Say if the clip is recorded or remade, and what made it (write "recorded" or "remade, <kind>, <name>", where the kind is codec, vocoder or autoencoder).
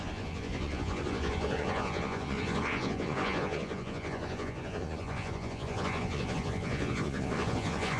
remade, vocoder, Vocos